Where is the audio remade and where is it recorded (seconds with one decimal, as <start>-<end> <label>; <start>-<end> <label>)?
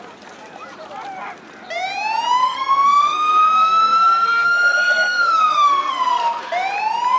0.0-2.4 recorded; 2.4-6.4 remade; 6.4-7.2 recorded